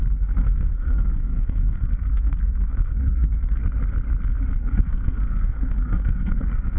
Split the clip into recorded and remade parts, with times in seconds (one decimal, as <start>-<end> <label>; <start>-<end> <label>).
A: 0.0-3.6 remade; 3.6-4.6 recorded; 4.6-6.8 remade